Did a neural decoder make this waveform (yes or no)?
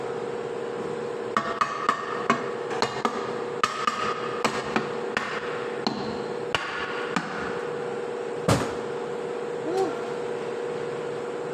no